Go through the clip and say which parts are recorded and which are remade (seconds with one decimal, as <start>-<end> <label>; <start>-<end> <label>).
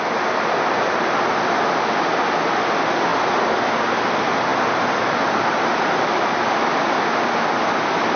0.0-3.1 recorded; 3.1-3.8 remade; 3.8-8.2 recorded